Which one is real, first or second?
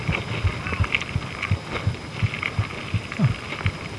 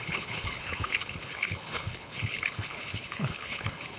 first